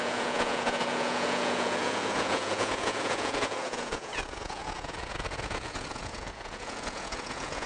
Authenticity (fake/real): fake